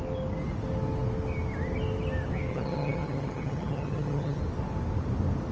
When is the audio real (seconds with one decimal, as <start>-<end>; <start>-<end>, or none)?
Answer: 0.0-2.5; 4.4-5.5